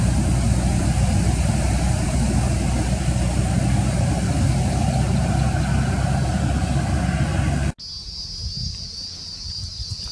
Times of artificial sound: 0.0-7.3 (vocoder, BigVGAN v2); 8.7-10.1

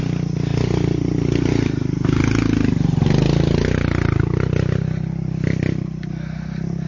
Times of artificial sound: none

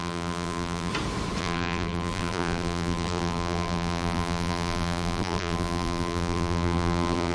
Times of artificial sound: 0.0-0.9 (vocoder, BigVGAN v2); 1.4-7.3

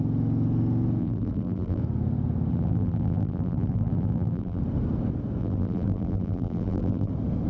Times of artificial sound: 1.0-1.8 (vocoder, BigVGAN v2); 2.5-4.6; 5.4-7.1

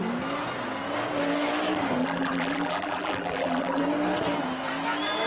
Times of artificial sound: 2.0-3.8 (vocoder, BigVGAN v2)

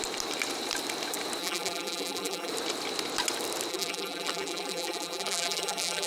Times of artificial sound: 1.4-2.5 (vocoder, BigVGAN v2); 3.7-6.1

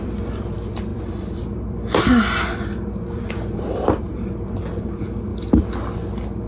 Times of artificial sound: 0.0-5.3 (vocoder, BigVGAN v2)

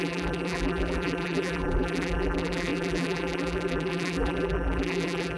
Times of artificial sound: 0.0-5.4 (vocoder, BigVGAN v2)